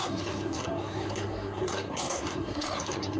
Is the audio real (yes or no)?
no